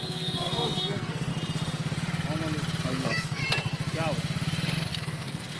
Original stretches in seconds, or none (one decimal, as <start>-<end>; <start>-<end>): 1.3-2.9; 3.4-4.9